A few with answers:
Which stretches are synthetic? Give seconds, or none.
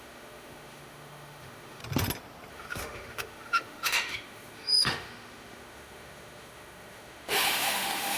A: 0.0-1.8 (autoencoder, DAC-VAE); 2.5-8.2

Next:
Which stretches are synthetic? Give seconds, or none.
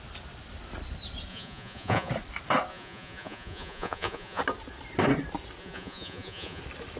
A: 1.3-2.1 (vocoder, Vocos); 2.7-4.4; 5.6-6.6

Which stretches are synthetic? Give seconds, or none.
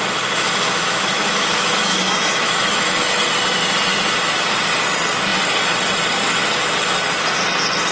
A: 0.9-3.2 (autoencoder, DAC-VAE)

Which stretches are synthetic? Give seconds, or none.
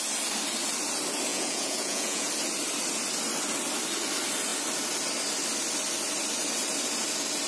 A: 1.3-2.3 (vocoder, Vocos)